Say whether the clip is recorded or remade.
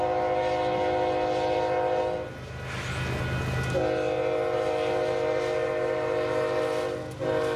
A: recorded